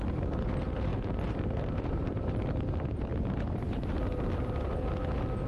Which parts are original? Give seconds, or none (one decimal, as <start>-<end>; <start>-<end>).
0.0-0.9; 2.3-3.1; 4.0-5.5